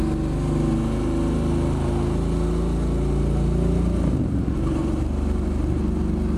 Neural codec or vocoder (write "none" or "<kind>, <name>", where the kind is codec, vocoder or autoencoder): none